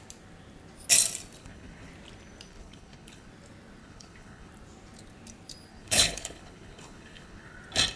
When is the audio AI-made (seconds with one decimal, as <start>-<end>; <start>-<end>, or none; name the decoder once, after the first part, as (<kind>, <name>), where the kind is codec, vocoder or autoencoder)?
1.4-1.9 (codec, HILCodec); 2.5-3.3; 3.8-4.5; 5.7-7.6